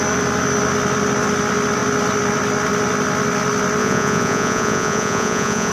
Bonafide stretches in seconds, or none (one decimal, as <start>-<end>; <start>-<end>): 0.0-3.8